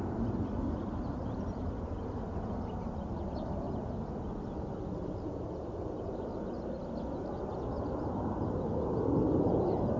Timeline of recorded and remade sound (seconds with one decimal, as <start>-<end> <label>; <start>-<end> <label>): 0.0-10.0 recorded

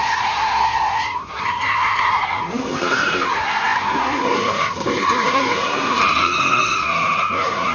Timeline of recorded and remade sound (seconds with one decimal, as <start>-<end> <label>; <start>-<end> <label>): 0.0-7.7 remade

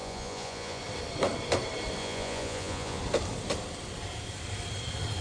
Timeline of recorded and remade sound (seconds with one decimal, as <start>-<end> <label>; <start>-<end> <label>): 0.0-0.8 remade; 0.8-2.0 recorded; 2.0-3.0 remade; 3.0-5.2 recorded

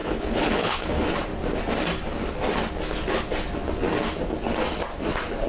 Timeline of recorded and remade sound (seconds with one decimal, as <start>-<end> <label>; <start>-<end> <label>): 0.0-0.9 remade; 0.9-5.5 recorded

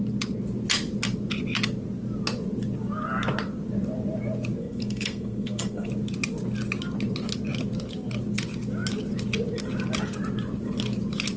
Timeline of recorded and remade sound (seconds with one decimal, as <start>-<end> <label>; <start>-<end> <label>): 0.0-4.6 recorded; 4.6-5.9 remade; 5.9-11.4 recorded